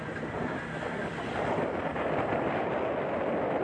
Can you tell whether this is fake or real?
fake